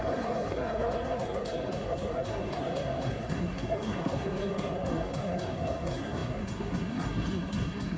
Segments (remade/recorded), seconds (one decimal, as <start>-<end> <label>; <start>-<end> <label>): 0.0-8.0 remade